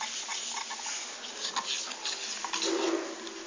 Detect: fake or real real